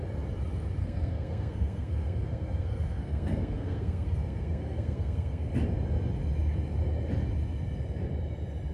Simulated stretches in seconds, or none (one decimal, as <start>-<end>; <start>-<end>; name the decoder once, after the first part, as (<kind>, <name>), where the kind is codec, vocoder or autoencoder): 0.8-5.5 (codec, SNAC)